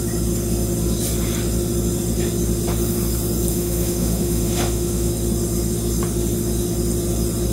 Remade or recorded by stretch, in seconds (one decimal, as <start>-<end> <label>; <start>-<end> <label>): 0.0-3.5 recorded; 3.5-5.1 remade; 5.1-7.5 recorded